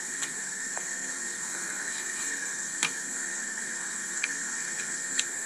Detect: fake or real fake